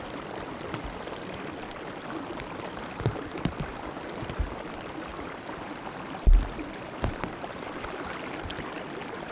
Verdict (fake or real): real